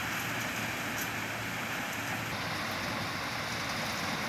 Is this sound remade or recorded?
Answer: recorded